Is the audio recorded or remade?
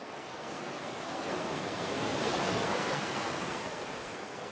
remade